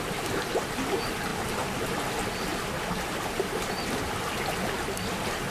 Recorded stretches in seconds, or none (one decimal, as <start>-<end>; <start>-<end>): 0.0-5.5